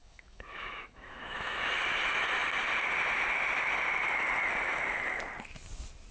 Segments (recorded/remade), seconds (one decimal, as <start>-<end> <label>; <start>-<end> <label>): 0.0-1.7 remade; 1.7-6.1 recorded